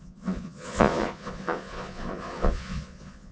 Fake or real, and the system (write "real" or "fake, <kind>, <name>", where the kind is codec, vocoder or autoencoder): fake, vocoder, Vocos